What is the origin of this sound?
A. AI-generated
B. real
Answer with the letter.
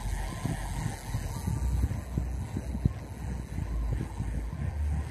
B